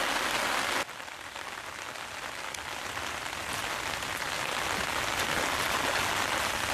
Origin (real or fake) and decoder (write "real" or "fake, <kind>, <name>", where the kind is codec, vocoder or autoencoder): real